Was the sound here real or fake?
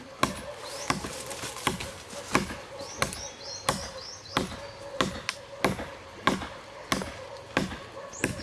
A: real